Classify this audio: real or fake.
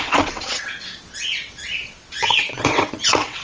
fake